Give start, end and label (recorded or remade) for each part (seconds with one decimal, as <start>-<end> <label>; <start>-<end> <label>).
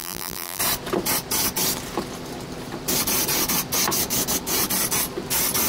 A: 0.0-0.6 remade; 0.6-5.7 recorded